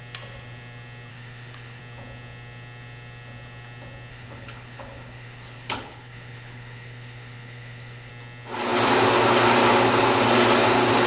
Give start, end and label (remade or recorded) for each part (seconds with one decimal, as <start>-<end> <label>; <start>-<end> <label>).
0.0-1.1 recorded; 1.1-1.8 remade; 1.8-4.1 recorded; 4.1-8.1 remade; 8.1-11.1 recorded

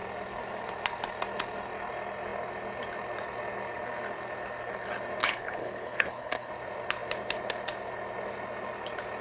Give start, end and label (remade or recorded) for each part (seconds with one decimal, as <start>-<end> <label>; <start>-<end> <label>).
0.0-5.2 recorded; 5.2-6.5 remade; 6.5-9.2 recorded

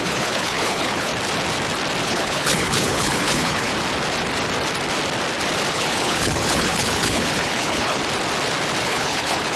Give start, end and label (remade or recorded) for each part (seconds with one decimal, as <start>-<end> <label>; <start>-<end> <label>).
0.0-1.1 remade; 1.1-2.0 recorded; 2.0-3.7 remade; 3.7-5.7 recorded; 5.7-8.0 remade; 8.0-8.8 recorded; 8.8-9.6 remade